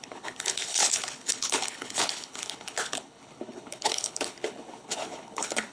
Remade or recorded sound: remade